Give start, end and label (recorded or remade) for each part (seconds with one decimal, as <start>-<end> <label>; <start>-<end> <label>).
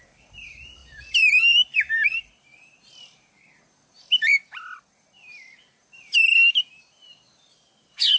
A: 0.0-8.2 recorded